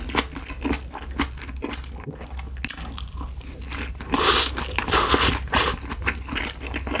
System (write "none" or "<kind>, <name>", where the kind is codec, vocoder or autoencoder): none